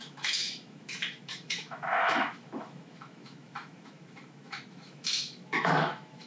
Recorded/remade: remade